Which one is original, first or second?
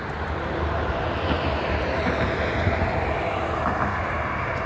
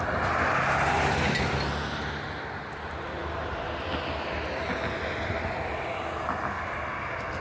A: second